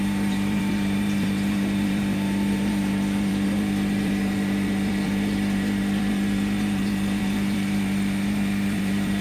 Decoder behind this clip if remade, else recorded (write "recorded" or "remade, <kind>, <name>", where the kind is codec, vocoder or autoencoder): remade, vocoder, BigVGAN v2